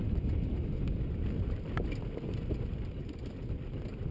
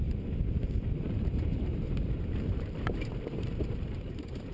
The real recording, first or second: first